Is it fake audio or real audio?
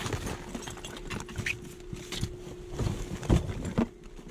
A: real